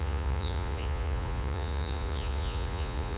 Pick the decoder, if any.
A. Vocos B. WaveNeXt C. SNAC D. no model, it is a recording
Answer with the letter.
A